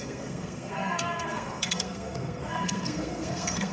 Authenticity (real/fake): fake